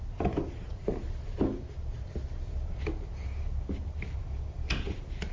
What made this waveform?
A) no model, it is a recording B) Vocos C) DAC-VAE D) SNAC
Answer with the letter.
A